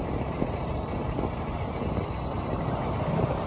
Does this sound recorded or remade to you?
recorded